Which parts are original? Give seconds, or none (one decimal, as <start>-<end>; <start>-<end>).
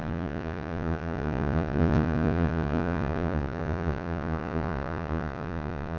none